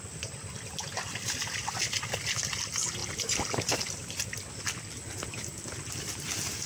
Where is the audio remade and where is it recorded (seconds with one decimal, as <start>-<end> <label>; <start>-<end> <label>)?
0.0-3.0 recorded; 3.0-4.2 remade; 4.2-6.7 recorded